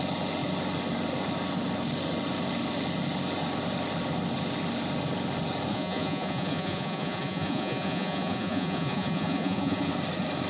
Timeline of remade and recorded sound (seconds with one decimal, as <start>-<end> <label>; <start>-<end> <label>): 0.0-5.7 recorded; 5.7-9.9 remade; 9.9-10.5 recorded